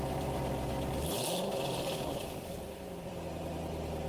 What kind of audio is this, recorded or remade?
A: remade